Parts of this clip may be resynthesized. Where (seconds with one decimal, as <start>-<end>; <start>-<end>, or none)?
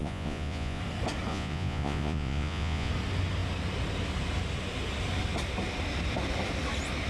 0.0-0.8; 1.3-2.9